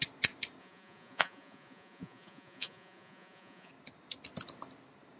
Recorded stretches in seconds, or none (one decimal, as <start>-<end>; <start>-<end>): 0.0-0.6; 3.7-5.2